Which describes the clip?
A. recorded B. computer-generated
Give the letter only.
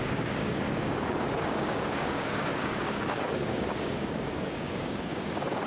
B